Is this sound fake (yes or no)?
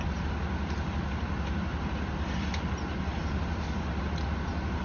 no